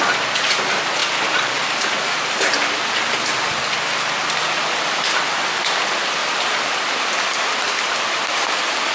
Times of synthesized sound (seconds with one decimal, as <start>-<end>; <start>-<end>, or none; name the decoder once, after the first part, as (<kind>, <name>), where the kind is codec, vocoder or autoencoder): 1.0-3.6 (vocoder, BigVGAN v2); 6.2-8.9